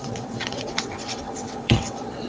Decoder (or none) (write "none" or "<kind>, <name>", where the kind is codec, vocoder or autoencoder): vocoder, WaveNeXt